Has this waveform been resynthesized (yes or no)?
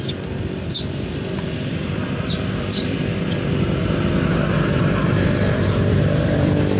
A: yes